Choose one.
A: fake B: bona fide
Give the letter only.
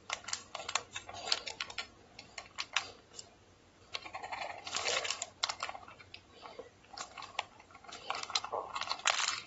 B